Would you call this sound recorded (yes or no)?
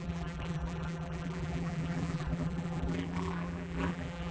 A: no